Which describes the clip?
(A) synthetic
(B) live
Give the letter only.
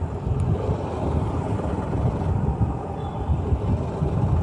A